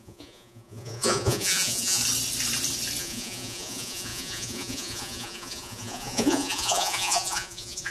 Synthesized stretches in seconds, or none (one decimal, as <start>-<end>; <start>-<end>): 0.0-2.0; 3.0-7.9